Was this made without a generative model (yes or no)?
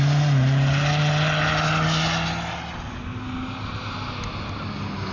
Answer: yes